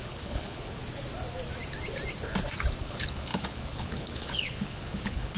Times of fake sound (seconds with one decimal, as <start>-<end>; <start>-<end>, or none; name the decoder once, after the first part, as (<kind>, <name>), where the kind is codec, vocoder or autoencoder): 0.0-0.8 (codec, HILCodec); 2.8-5.4